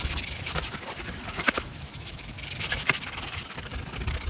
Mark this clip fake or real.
fake